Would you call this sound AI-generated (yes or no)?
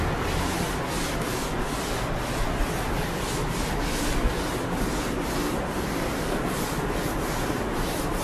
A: no